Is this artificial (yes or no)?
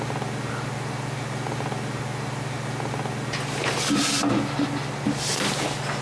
no